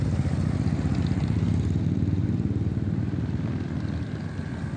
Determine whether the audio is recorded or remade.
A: recorded